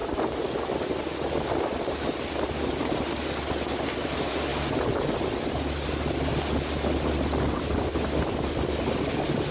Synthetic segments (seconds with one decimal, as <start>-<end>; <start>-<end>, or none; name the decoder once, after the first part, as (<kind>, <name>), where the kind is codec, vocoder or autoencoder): none